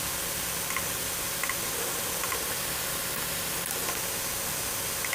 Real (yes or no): yes